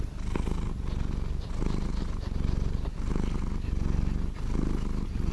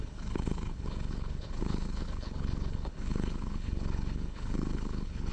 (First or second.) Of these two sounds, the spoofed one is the second